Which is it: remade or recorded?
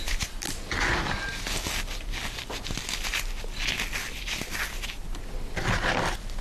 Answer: recorded